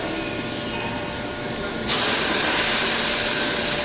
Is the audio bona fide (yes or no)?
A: yes